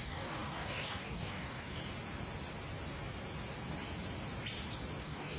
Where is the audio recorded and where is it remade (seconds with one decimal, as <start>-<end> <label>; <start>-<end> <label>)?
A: 0.0-1.8 remade; 1.8-5.0 recorded; 5.0-5.4 remade